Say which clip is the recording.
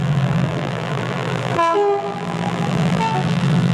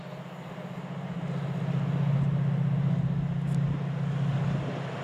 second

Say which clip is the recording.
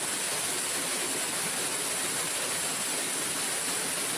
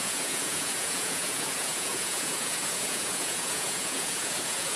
first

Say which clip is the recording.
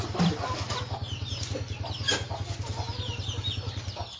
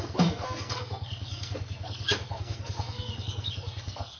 first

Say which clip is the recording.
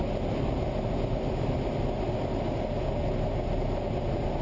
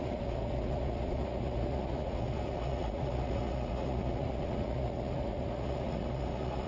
first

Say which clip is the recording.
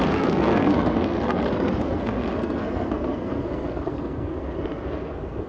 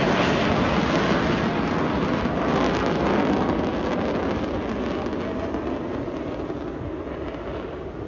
second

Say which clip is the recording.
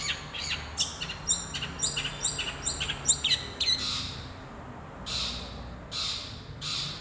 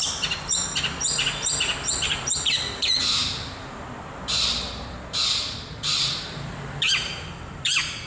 first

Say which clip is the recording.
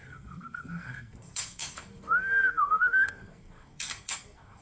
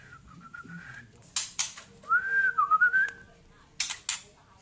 second